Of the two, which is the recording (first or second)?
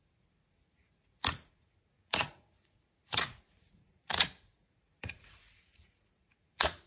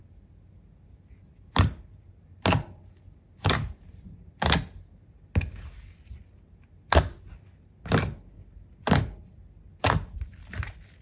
second